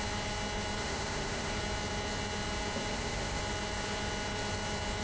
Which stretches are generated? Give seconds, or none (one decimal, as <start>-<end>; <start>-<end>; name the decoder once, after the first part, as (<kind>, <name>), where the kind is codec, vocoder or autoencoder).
0.8-1.5 (autoencoder, DAC-VAE); 2.9-3.4